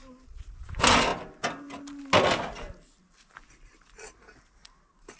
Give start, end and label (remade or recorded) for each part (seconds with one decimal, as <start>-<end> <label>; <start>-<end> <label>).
0.0-5.2 recorded